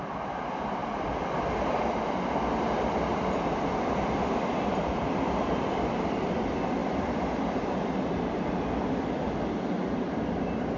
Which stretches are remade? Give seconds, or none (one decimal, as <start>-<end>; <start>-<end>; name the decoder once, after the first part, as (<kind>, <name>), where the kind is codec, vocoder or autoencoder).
none